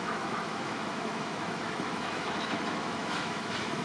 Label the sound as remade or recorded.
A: remade